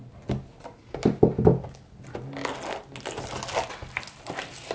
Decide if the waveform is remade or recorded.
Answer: recorded